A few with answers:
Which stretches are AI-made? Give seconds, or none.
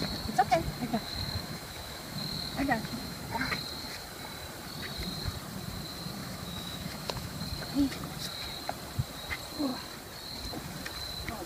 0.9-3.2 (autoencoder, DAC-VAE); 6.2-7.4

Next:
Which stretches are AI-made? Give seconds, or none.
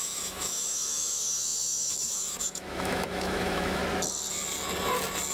0.0-3.8 (autoencoder, DAC-VAE)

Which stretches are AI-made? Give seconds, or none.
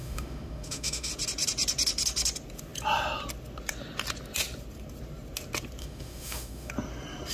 0.0-1.1 (autoencoder, DAC-VAE); 5.8-6.7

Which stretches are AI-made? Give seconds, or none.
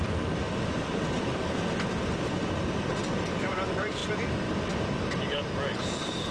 none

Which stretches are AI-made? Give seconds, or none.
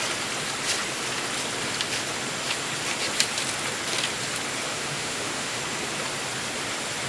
4.7-5.6 (autoencoder, DAC-VAE)